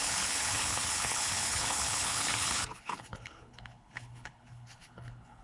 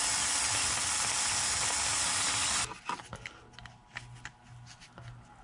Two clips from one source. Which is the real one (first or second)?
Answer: second